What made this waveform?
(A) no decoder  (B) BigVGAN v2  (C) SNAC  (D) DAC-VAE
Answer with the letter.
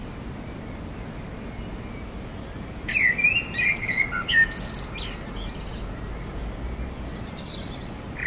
A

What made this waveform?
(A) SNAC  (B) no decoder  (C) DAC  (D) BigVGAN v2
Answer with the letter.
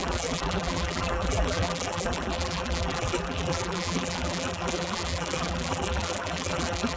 D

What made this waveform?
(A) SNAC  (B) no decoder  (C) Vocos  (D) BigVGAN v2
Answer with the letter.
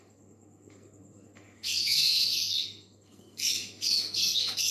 A